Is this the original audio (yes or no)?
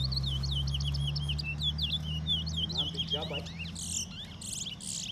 yes